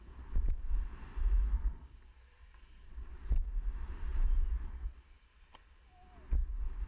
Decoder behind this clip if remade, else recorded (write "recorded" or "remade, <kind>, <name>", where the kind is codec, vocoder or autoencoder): recorded